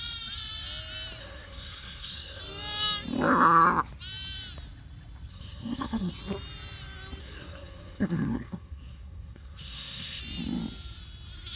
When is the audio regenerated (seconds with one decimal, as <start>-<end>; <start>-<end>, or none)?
1.2-2.4; 5.3-6.1; 7.2-10.2